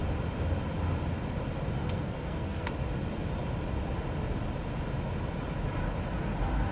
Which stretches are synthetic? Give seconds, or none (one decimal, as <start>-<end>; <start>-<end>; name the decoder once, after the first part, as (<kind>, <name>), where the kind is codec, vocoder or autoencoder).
1.8-2.7 (codec, SNAC)